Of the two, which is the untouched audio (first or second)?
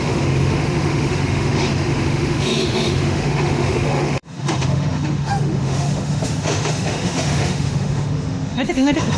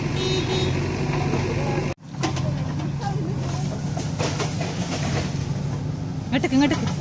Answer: second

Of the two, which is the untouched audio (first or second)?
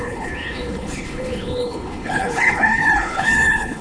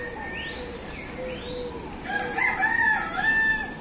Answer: second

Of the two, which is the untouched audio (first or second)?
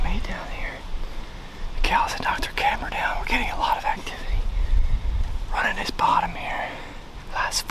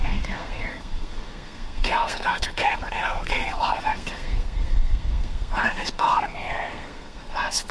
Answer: first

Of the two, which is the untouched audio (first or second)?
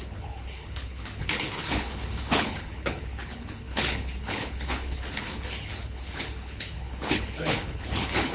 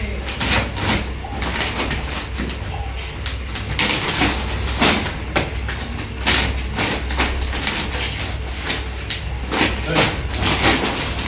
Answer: second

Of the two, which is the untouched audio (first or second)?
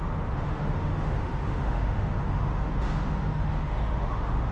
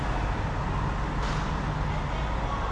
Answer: second